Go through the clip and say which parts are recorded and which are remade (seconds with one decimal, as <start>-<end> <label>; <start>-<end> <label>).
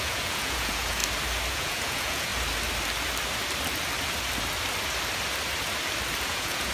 0.0-1.0 remade; 1.0-1.5 recorded; 1.5-2.3 remade; 2.3-6.2 recorded; 6.2-6.7 remade